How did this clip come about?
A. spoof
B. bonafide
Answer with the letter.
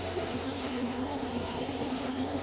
A